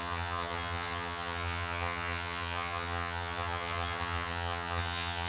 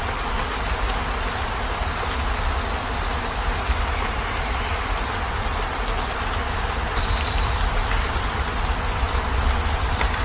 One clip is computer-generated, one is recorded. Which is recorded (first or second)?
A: second